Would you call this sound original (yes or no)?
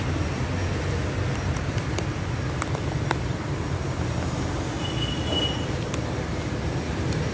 yes